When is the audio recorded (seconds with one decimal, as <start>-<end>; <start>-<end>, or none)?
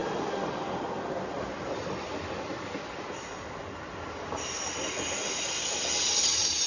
0.0-6.7